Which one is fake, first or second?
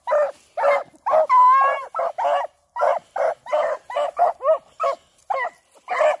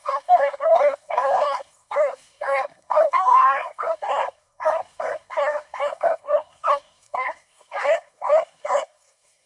second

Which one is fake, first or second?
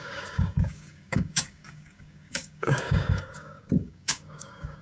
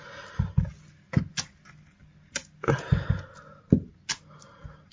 first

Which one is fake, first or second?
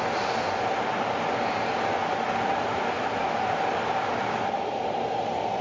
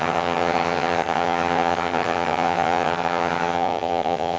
second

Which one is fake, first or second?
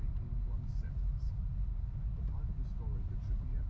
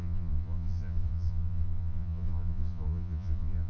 second